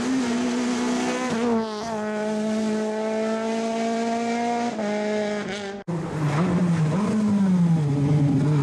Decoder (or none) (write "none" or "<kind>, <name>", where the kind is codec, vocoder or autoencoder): none